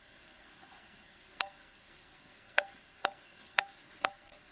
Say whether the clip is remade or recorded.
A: remade